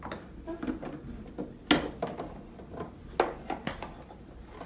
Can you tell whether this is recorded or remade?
recorded